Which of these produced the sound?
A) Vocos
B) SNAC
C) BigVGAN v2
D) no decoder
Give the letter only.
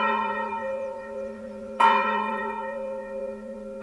A